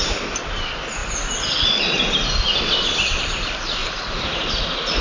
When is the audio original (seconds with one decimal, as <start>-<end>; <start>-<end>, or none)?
0.0-3.8